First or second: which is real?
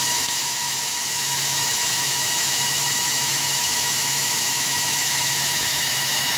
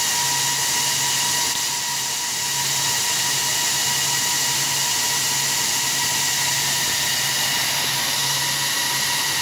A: second